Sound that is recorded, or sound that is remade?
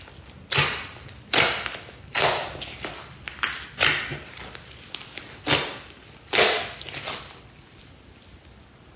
recorded